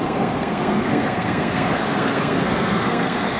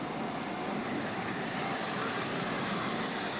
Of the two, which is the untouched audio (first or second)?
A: second